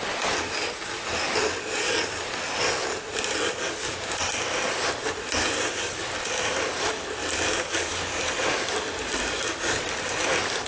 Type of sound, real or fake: real